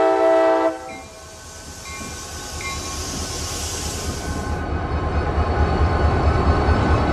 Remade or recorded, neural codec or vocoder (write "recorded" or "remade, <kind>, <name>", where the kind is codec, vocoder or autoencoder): recorded